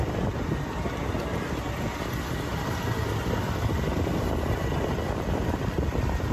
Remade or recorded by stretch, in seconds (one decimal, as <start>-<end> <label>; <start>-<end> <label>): 0.0-2.5 recorded; 2.5-6.3 remade